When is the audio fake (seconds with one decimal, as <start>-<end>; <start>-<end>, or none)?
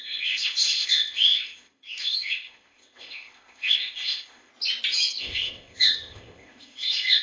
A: 0.0-4.5; 5.2-7.2